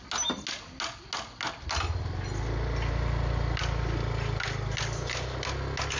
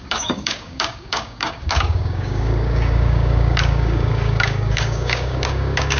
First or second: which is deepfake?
second